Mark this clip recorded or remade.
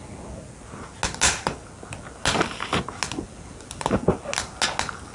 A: recorded